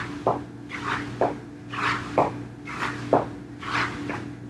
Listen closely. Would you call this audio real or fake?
real